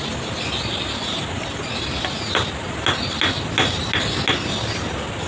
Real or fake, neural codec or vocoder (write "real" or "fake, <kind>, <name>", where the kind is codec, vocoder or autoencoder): real